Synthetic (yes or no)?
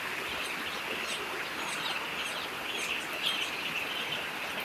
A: no